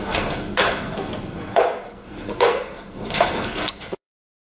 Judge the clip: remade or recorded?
remade